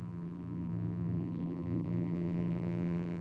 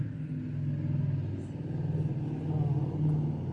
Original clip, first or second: second